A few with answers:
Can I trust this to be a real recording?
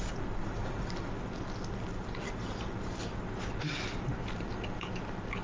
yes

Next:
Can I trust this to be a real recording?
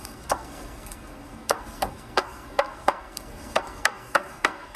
no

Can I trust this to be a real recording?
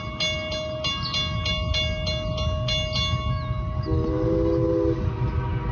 yes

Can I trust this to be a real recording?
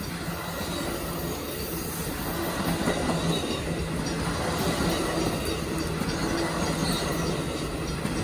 yes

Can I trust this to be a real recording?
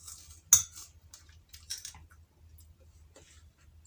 yes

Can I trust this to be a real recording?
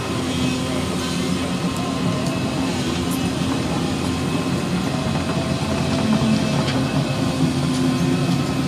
yes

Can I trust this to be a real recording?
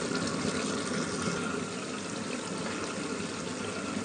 yes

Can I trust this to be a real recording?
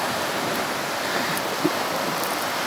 yes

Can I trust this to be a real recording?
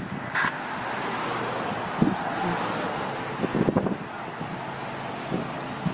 yes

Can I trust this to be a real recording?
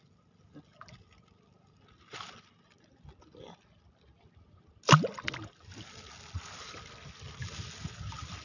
yes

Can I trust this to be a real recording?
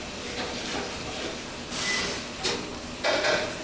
yes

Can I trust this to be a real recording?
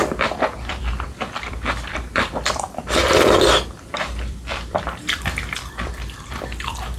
no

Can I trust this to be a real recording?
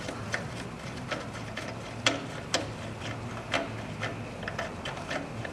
yes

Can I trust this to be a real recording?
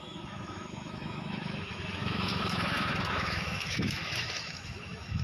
no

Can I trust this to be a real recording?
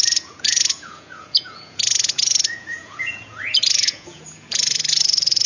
no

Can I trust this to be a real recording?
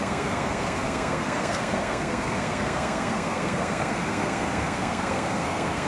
no